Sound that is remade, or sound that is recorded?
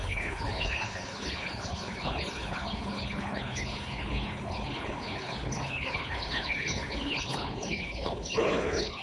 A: remade